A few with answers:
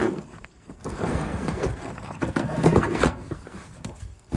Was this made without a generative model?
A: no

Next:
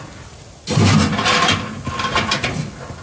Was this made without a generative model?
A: yes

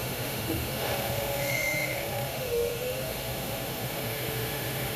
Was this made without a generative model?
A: no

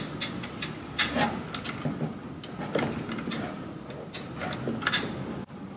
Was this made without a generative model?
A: yes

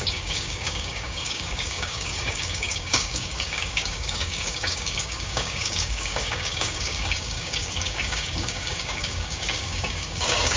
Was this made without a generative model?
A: no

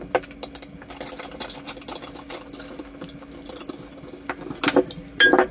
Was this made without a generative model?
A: yes